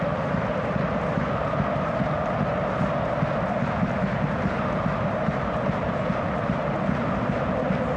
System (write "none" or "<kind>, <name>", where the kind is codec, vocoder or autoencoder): none